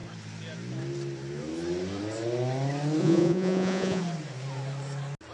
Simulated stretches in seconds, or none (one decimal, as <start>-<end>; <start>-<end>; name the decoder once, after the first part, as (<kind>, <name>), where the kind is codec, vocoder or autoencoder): 3.0-4.0 (vocoder, Vocos)